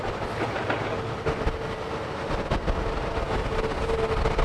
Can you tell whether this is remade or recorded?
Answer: recorded